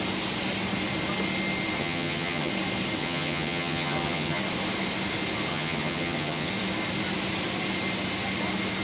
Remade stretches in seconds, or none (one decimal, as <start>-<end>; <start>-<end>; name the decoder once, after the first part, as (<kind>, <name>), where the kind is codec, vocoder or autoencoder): 1.8-2.5 (vocoder, HiFi-GAN); 3.0-4.4; 5.5-6.5